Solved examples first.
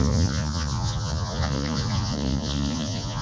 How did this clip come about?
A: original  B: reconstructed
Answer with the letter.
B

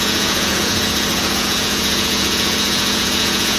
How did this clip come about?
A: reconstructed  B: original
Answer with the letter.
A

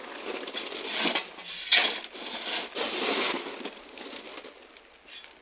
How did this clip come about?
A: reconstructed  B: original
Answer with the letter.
B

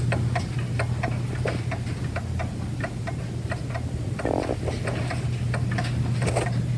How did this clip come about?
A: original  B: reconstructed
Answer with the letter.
A